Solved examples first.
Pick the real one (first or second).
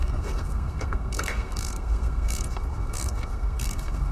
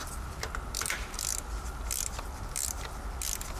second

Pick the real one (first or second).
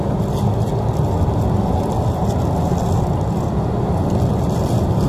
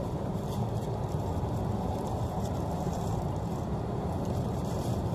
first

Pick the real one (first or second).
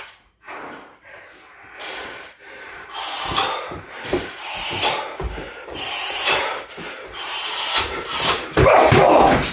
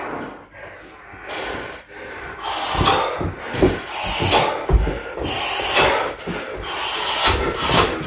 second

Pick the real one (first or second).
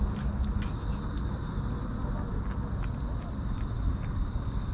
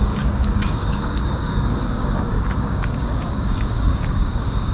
first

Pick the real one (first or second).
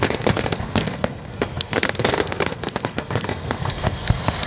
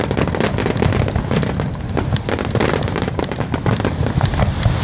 second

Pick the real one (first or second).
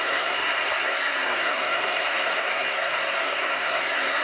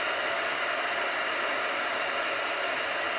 second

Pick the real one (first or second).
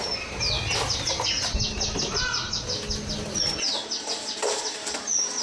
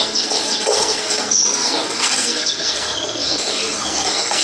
first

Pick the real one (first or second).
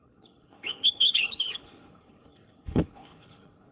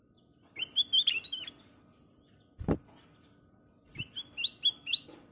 second